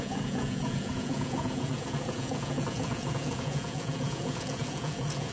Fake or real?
fake